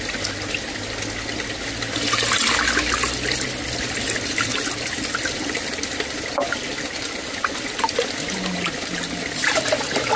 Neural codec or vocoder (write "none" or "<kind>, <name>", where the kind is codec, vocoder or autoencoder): none